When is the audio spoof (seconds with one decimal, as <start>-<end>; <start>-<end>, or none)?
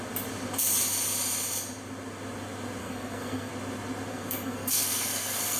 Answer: 2.8-3.5; 4.1-5.6